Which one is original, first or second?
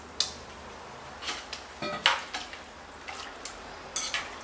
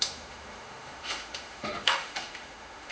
first